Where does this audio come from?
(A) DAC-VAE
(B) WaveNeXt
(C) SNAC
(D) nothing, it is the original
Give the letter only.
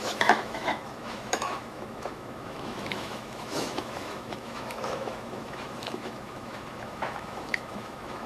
A